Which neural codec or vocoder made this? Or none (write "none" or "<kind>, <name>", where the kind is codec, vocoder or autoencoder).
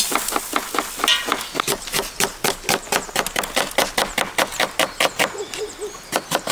none